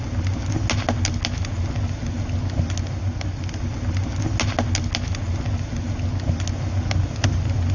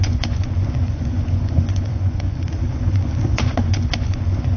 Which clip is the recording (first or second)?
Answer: first